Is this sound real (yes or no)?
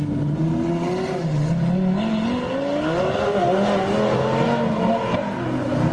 yes